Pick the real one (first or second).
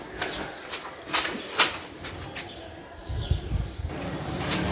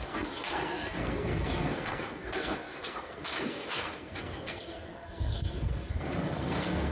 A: first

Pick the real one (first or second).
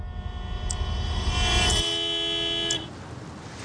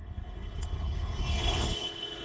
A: first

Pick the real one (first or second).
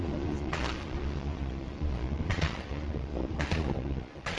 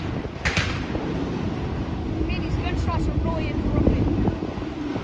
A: second